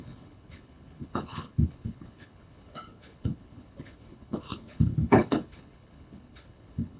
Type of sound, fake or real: fake